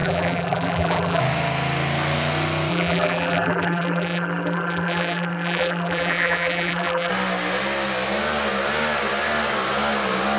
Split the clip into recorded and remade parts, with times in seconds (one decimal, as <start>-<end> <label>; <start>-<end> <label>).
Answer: 0.0-1.2 remade; 1.2-2.7 recorded; 2.7-7.1 remade; 7.1-10.4 recorded